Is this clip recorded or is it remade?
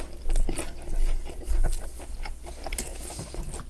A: recorded